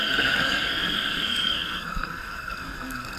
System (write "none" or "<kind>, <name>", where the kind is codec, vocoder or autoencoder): codec, SNAC